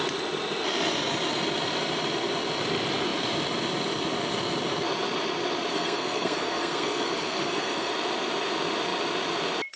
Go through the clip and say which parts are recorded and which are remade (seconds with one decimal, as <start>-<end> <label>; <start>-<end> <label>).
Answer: 0.0-5.7 recorded; 5.7-7.9 remade; 7.9-9.8 recorded